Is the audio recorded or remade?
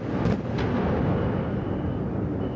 recorded